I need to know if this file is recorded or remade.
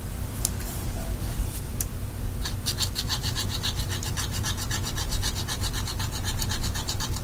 remade